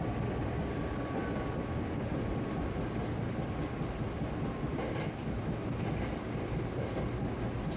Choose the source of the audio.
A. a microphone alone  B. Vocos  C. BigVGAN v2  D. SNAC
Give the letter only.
A